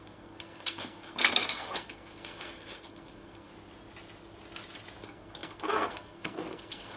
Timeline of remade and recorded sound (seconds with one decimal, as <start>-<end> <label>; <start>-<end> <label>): 0.0-3.5 remade; 3.5-5.0 recorded; 5.0-7.0 remade